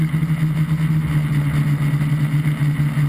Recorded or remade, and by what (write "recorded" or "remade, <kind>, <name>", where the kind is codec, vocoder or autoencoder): recorded